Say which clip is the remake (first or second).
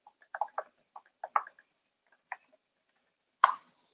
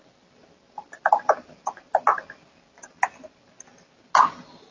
first